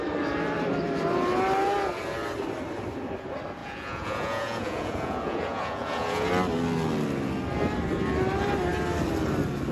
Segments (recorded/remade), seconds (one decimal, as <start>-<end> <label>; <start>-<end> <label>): 0.0-3.6 recorded; 3.6-6.3 remade; 6.3-9.7 recorded